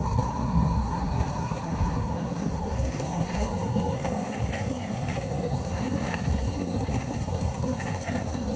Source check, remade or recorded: remade